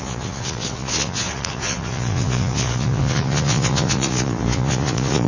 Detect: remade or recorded remade